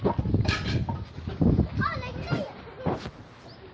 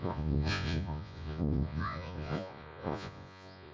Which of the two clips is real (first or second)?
first